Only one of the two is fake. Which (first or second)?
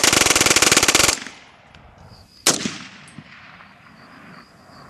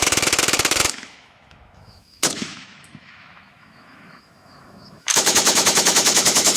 second